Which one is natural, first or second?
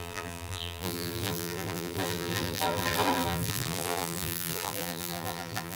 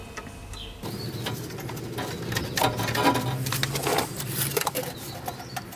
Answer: second